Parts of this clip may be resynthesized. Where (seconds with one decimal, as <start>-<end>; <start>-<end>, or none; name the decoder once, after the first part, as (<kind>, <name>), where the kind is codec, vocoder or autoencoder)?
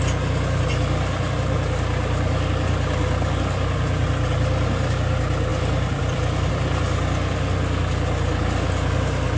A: 5.5-6.5 (vocoder, BigVGAN v2)